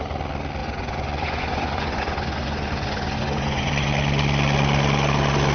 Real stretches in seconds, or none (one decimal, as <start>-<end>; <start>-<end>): 0.0-0.6; 3.9-5.5